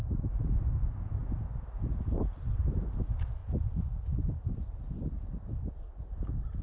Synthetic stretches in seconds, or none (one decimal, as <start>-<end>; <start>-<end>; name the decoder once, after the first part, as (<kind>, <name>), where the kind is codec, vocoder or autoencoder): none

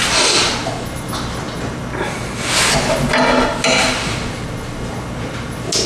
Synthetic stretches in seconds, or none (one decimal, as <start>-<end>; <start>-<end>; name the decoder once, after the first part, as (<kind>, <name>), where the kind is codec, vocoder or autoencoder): none

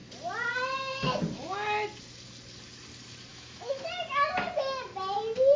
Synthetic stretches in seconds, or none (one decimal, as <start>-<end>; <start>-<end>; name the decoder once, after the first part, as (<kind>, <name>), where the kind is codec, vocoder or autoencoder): 3.3-3.8 (autoencoder, DAC-VAE)